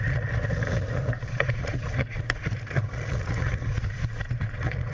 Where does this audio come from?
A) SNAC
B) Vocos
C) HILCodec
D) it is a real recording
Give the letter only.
B